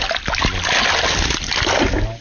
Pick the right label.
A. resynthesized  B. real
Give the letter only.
B